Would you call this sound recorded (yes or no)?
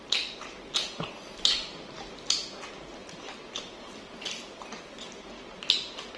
yes